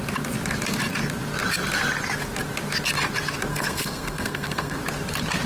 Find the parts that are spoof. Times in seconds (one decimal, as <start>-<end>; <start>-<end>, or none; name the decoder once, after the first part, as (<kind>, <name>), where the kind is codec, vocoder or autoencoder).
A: 3.5-4.8 (codec, SNAC)